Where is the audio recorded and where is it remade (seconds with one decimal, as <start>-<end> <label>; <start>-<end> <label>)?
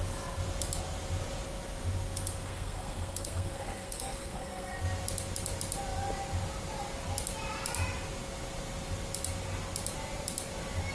0.0-2.4 recorded; 2.4-4.8 remade; 4.8-10.9 recorded